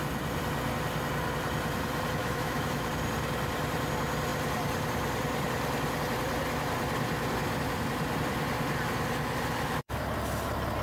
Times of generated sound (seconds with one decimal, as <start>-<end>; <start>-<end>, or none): 2.2-2.9